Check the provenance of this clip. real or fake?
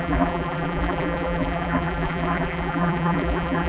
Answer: fake